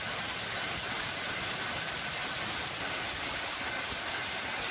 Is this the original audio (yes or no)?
yes